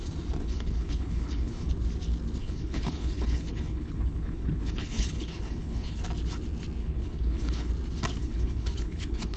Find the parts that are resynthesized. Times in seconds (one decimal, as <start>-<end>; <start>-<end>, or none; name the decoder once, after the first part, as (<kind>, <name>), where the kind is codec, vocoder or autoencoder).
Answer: 0.4-1.7 (codec, HILCodec); 2.4-6.0; 6.8-7.7; 8.2-9.4